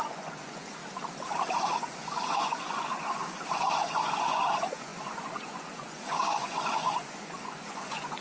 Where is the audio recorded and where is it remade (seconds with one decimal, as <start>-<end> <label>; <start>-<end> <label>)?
0.0-0.8 remade; 0.8-1.6 recorded; 1.6-8.2 remade